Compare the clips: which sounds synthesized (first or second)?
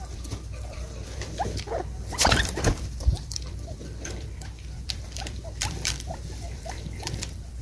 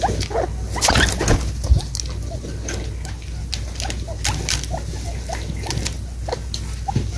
first